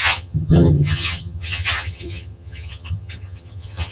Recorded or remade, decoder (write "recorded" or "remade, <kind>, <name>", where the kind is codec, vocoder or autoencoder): remade, vocoder, HiFi-GAN